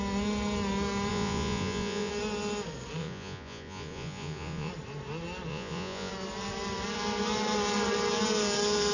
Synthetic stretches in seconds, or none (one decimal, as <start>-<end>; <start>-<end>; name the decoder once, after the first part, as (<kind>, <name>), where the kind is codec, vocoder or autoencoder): 1.1-2.1 (vocoder, Vocos); 3.0-4.7; 5.5-6.1